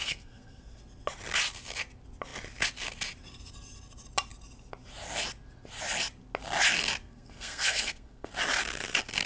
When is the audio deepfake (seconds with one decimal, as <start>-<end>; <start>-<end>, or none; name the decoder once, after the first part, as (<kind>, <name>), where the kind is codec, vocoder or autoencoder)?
0.0-0.8 (codec, SNAC); 7.0-8.3